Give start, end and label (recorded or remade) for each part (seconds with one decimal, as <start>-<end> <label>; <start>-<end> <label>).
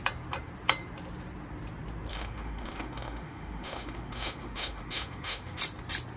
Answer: 0.0-2.1 recorded; 2.1-5.6 remade; 5.6-6.2 recorded